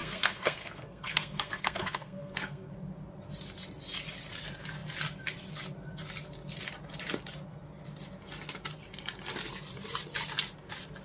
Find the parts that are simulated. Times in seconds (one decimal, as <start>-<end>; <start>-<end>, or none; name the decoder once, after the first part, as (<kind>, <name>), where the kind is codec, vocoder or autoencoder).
0.0-2.7 (codec, SNAC)